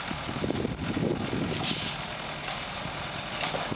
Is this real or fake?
real